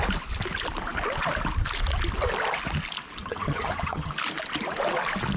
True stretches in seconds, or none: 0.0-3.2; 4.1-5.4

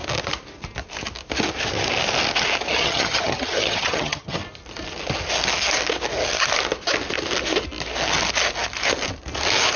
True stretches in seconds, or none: 0.0-2.7; 4.4-9.8

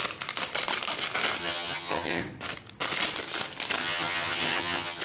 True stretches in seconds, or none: 0.0-1.4; 2.2-3.8

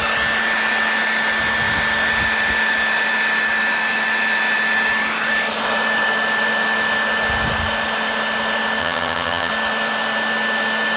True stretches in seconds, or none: 0.0-8.8; 9.5-11.0

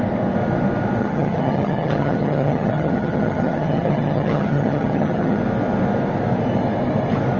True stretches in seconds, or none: 0.0-1.0; 5.4-7.4